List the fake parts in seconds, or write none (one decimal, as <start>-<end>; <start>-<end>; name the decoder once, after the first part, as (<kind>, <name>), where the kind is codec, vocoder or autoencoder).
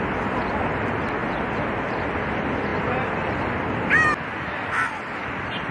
none